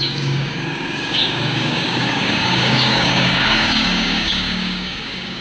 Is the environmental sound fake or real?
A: fake